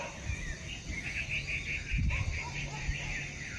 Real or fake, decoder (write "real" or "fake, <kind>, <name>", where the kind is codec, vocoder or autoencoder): real